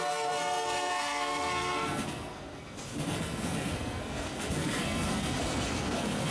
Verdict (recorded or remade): remade